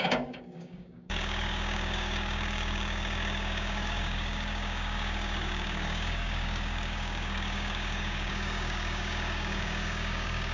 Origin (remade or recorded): remade